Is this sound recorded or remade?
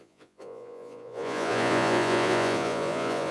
remade